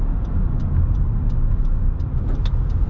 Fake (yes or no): no